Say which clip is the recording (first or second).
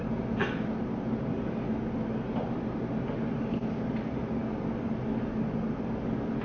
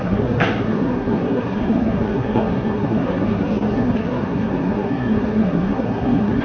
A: first